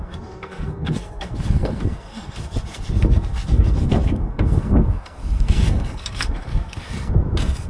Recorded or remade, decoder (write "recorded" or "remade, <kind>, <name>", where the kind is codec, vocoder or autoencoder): remade, codec, SNAC